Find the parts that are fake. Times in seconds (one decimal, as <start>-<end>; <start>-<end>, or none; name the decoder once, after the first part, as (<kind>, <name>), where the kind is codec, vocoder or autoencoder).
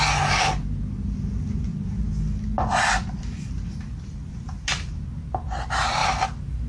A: none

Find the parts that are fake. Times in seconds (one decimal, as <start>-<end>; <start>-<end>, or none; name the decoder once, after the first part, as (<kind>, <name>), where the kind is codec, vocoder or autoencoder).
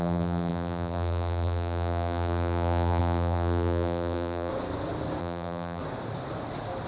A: 0.0-4.5 (vocoder, BigVGAN v2); 5.2-5.8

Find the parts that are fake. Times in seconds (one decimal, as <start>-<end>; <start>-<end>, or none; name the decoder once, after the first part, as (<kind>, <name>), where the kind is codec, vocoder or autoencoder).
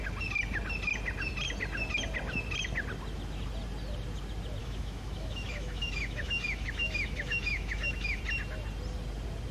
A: 4.6-8.2 (autoencoder, DAC-VAE)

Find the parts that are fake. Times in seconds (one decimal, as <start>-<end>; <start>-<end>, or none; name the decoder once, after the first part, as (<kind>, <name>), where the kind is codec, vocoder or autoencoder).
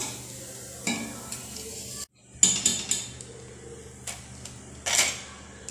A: none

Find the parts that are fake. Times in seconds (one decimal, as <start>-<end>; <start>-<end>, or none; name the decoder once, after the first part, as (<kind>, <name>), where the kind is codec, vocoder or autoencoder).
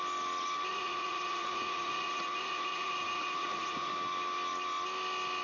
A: 0.7-3.9 (vocoder, Vocos)